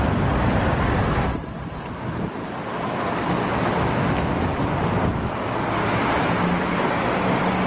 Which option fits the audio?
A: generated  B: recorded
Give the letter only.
B